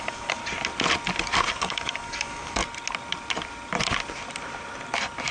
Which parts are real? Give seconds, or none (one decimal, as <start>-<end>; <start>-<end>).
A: 0.4-1.5; 2.6-5.3